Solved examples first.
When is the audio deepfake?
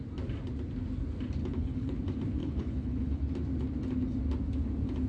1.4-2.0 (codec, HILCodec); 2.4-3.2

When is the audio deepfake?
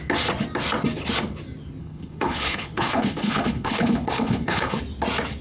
1.8-4.8 (codec, HILCodec)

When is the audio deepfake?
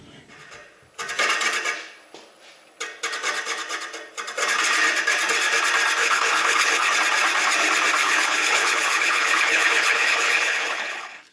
6.0-6.9 (codec, HILCodec); 8.0-11.3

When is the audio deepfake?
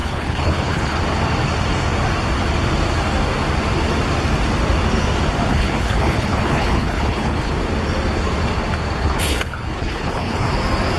0.0-1.0 (codec, HILCodec); 5.5-7.5; 9.0-10.5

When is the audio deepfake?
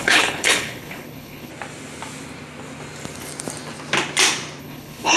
0.0-1.5 (codec, HILCodec); 4.6-5.2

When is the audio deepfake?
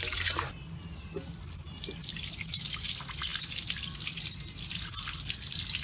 none